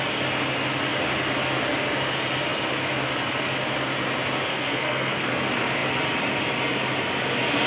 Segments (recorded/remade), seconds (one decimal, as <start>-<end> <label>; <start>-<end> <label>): 0.0-4.5 recorded; 4.5-5.3 remade; 5.3-7.7 recorded